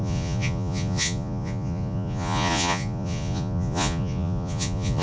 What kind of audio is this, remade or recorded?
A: remade